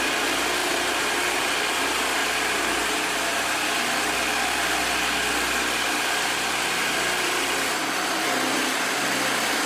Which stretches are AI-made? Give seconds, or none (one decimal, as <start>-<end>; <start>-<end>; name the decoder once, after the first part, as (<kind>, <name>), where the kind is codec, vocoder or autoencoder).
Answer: 0.6-1.5 (vocoder, BigVGAN v2); 2.2-3.4